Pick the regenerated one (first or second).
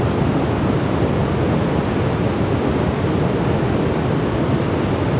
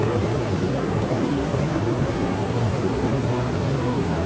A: second